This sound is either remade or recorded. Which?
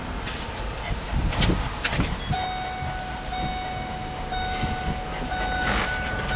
recorded